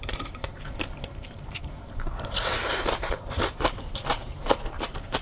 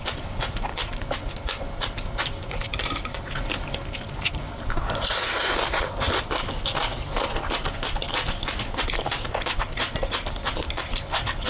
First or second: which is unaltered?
second